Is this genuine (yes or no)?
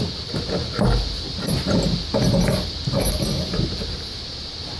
yes